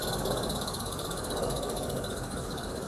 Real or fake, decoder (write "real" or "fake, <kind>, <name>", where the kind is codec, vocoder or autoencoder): fake, codec, DAC